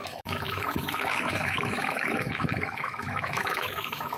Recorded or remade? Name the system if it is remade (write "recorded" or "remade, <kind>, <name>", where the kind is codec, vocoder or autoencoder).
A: remade, autoencoder, DAC-VAE